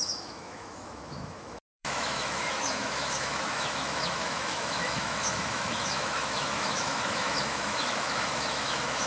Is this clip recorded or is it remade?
remade